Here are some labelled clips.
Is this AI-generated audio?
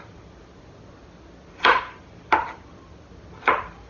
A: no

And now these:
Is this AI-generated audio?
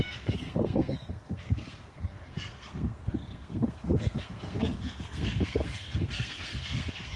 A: yes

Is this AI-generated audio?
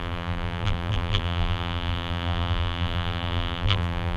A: yes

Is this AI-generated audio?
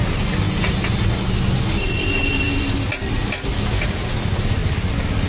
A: no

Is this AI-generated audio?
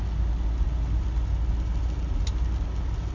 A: no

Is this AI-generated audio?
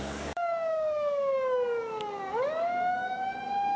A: yes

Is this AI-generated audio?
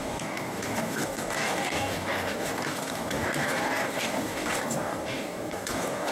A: yes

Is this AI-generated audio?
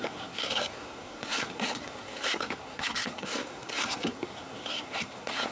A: yes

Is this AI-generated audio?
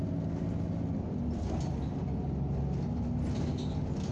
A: no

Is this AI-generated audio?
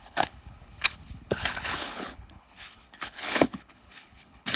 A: yes